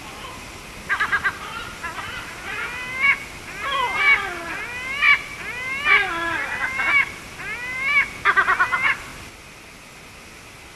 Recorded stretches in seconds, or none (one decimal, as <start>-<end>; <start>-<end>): 0.0-10.8